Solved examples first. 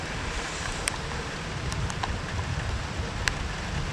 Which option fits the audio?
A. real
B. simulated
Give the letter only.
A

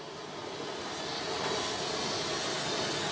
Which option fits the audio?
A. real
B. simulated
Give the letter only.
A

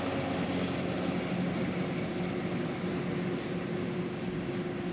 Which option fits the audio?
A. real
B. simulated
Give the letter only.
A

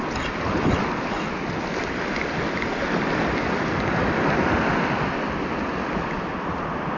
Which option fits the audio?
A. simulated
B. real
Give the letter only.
B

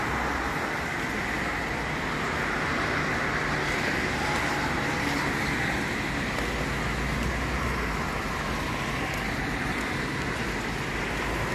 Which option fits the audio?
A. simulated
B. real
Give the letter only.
B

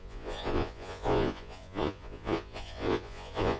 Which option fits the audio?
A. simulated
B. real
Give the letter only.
A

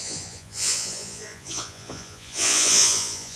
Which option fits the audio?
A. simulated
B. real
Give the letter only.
A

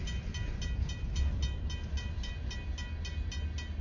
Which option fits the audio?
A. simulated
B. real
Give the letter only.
B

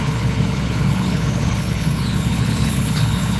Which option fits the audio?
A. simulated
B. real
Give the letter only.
A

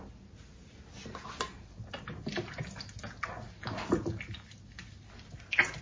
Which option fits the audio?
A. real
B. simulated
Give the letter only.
A